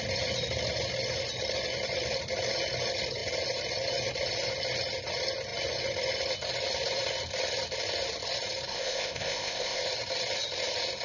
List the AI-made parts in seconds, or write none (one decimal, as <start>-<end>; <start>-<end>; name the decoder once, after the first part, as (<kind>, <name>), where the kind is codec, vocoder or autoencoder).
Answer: 8.7-9.8 (codec, ZipCodec)